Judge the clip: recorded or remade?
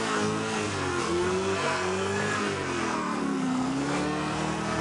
remade